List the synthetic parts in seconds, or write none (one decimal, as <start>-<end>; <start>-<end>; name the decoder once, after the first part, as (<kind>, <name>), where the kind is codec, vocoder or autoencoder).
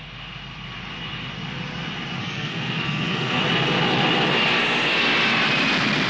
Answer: 2.2-3.4 (codec, SNAC)